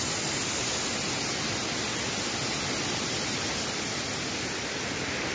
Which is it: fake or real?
real